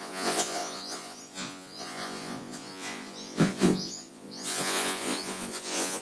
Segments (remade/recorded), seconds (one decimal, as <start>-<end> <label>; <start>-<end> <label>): 0.0-6.0 remade